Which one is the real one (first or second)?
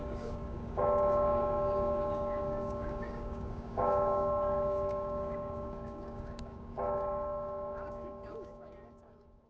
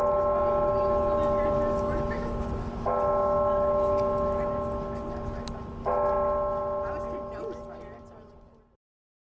second